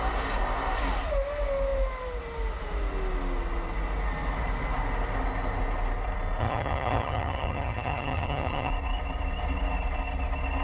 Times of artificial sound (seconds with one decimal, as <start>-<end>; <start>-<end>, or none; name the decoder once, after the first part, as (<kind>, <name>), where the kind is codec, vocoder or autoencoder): 6.4-8.7 (vocoder, HiFi-GAN)